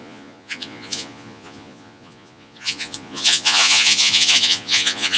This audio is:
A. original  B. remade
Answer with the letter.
B